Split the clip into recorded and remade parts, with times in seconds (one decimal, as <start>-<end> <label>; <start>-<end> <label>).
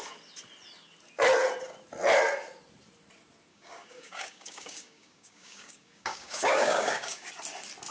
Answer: 0.0-3.5 recorded; 3.5-7.3 remade; 7.3-7.9 recorded